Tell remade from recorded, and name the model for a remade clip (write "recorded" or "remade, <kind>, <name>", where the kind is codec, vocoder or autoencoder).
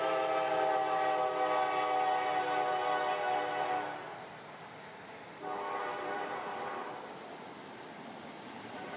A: recorded